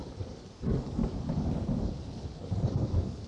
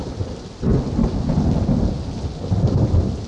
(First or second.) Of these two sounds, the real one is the second